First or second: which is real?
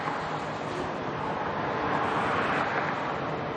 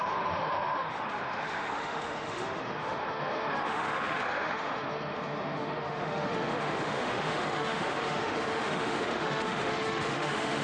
first